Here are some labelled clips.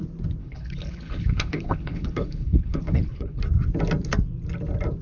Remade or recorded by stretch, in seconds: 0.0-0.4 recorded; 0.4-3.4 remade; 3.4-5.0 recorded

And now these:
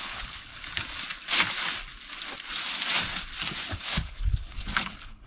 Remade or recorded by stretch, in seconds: 0.0-0.5 remade; 0.5-3.7 recorded; 3.7-5.3 remade

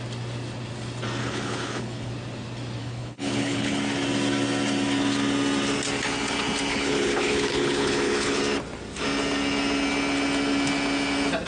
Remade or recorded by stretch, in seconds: 0.0-1.2 recorded; 1.2-2.1 remade; 2.1-2.8 recorded; 2.8-3.8 remade; 3.8-6.7 recorded; 6.7-8.4 remade; 8.4-11.5 recorded

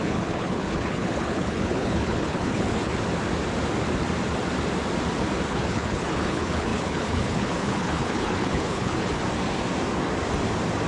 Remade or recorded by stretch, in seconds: 0.0-2.9 remade; 2.9-5.5 recorded; 5.5-9.2 remade; 9.2-10.9 recorded